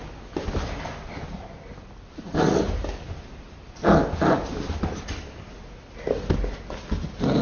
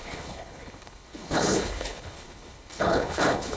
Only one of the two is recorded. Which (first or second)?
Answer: first